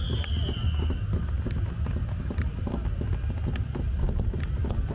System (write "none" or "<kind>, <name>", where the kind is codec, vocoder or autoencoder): none